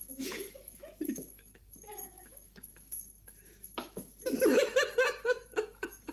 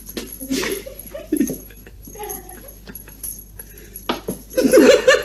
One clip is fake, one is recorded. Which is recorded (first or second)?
second